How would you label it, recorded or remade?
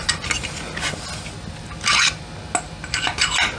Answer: recorded